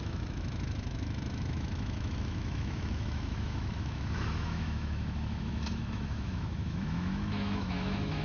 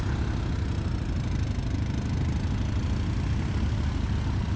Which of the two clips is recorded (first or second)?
second